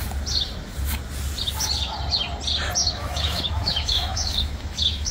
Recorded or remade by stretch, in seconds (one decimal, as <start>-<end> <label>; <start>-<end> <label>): 0.0-2.8 recorded; 2.8-5.1 remade